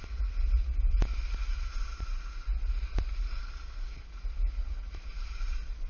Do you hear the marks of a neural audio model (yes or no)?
no